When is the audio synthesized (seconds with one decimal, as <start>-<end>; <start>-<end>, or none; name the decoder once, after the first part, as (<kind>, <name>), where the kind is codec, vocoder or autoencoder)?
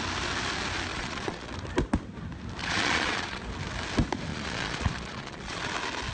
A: 0.9-1.5 (vocoder, Vocos); 2.6-3.4; 4.3-5.6